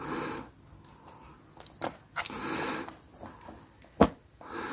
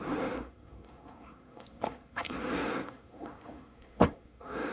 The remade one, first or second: second